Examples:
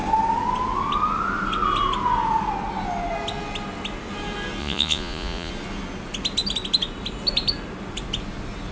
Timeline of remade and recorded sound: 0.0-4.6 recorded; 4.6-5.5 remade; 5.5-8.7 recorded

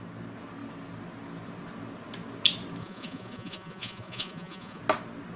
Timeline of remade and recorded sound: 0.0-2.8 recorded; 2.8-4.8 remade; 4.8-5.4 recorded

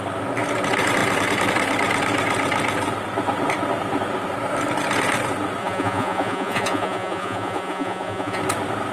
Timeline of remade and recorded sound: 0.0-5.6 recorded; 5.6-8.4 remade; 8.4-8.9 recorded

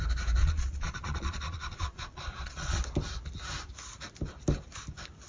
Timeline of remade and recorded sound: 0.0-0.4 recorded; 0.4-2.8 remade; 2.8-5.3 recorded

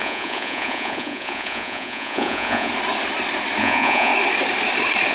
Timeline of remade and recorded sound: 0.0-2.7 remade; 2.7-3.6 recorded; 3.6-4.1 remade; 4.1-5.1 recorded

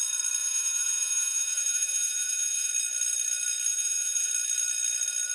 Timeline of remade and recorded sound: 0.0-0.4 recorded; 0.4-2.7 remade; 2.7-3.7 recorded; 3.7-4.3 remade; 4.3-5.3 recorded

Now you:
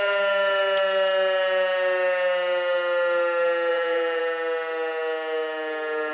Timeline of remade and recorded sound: 0.0-3.7 recorded; 3.7-4.2 remade; 4.2-6.1 recorded

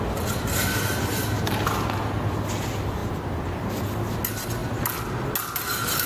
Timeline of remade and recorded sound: 0.0-6.1 recorded